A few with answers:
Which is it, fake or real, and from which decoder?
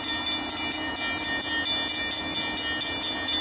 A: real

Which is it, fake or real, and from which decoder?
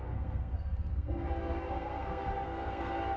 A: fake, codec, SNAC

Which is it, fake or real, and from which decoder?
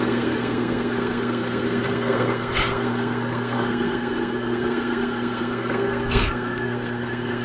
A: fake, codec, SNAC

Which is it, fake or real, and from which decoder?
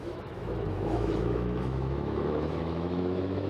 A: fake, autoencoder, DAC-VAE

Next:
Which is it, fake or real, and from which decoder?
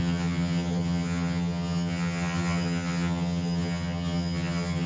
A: fake, vocoder, HiFi-GAN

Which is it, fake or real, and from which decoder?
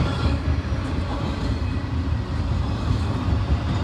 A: real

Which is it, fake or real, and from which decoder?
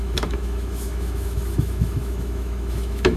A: fake, autoencoder, DAC-VAE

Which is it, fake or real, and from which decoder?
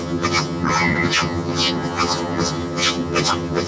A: fake, vocoder, HiFi-GAN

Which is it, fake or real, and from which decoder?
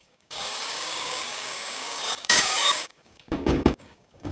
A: fake, codec, DAC